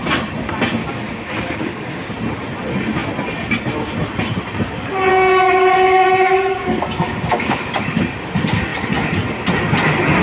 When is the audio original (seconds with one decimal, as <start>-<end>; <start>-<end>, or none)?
0.0-0.8; 2.1-5.1; 7.8-10.2